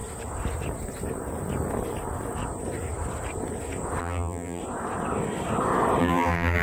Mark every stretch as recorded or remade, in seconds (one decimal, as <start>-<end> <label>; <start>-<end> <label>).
0.0-4.0 recorded; 4.0-4.6 remade; 4.6-6.0 recorded; 6.0-6.6 remade